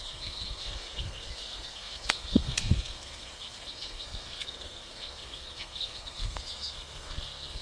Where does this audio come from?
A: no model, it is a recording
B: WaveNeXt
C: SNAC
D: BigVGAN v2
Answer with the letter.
C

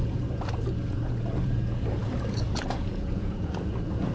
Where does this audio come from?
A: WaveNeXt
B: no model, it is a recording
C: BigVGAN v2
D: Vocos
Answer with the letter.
D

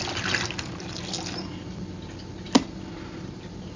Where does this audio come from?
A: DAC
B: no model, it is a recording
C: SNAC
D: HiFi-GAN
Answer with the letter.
B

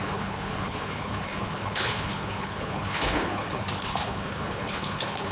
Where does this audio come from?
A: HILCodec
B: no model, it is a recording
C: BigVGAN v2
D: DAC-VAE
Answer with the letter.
A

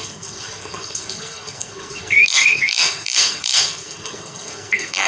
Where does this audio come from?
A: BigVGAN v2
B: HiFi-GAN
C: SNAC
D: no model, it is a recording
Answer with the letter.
C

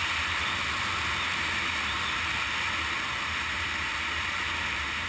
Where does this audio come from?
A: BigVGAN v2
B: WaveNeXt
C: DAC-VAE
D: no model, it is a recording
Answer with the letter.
D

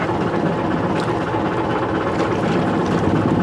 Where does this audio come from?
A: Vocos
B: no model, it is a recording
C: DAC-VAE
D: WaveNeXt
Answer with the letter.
B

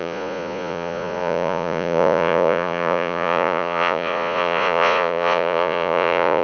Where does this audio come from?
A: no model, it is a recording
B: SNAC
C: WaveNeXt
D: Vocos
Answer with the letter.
D